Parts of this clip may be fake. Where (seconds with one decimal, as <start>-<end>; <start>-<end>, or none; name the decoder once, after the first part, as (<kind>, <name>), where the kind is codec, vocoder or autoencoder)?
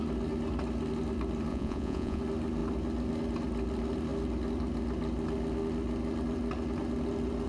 1.5-2.2 (vocoder, Vocos)